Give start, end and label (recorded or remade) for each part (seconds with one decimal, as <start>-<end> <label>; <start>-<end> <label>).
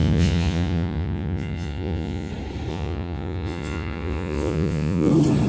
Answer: 0.0-2.3 remade; 2.3-2.7 recorded; 2.7-5.1 remade; 5.1-5.5 recorded